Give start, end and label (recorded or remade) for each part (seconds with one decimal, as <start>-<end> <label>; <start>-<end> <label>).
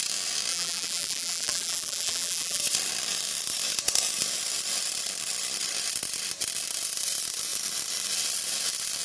0.0-0.5 recorded; 0.5-2.6 remade; 2.6-9.0 recorded